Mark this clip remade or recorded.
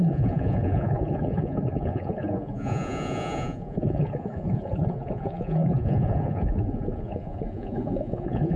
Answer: remade